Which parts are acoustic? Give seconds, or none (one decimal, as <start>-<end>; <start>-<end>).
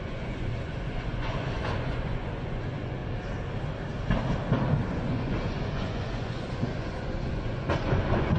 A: 3.0-4.9